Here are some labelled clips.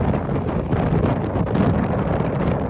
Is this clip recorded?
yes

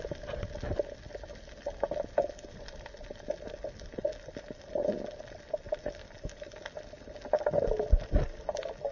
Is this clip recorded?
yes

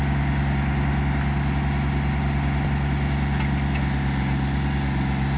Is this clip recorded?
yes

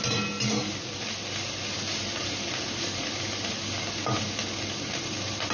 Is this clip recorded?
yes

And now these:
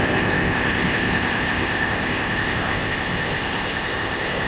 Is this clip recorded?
no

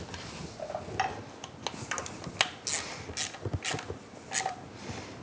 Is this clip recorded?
yes